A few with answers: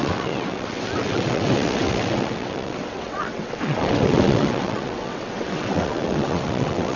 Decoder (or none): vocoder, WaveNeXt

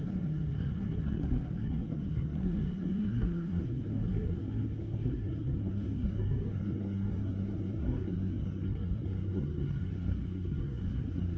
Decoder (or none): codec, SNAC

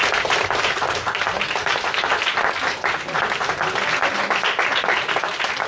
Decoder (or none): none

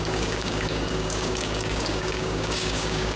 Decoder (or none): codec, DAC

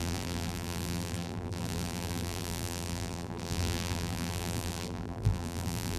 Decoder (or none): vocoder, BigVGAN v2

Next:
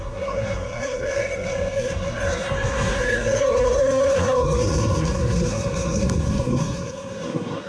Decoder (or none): codec, SNAC